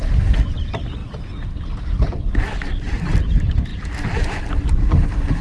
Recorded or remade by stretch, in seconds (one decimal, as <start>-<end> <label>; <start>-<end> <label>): 0.0-5.4 recorded

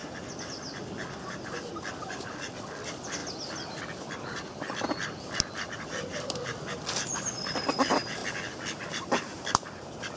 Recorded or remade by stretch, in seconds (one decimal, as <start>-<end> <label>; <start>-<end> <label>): 0.0-1.1 recorded; 1.1-3.2 remade; 3.2-3.8 recorded; 3.8-8.2 remade; 8.2-8.8 recorded; 8.8-10.2 remade

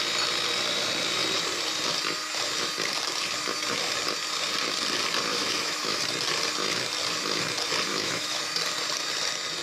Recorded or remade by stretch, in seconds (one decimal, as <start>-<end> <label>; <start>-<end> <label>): 0.0-5.3 recorded; 5.3-6.0 remade; 6.0-7.9 recorded; 7.9-8.4 remade; 8.4-9.6 recorded

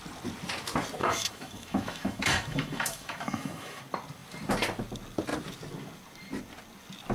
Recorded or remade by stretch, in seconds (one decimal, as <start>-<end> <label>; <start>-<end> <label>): 0.0-1.0 recorded; 1.0-3.8 remade; 3.8-7.1 recorded

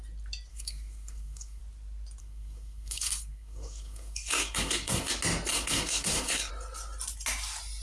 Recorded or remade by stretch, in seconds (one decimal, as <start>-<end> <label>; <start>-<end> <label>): 0.0-0.5 recorded; 0.5-1.6 remade; 1.6-2.2 recorded; 2.2-5.1 remade; 5.1-5.5 recorded; 5.5-6.5 remade; 6.5-7.8 recorded